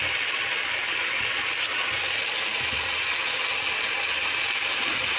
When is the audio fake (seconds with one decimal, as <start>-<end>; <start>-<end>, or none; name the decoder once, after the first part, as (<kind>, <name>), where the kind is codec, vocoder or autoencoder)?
none